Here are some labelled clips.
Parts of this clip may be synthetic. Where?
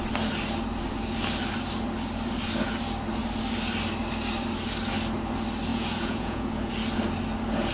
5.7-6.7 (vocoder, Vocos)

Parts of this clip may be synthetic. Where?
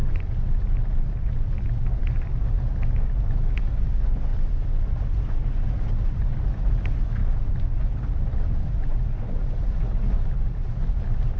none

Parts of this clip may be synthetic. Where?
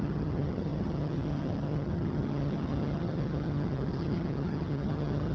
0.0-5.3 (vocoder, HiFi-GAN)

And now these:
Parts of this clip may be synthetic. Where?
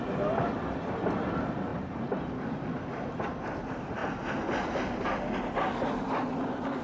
none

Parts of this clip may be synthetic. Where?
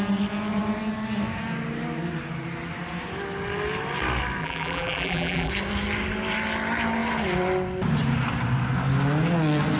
4.4-5.5 (vocoder, BigVGAN v2)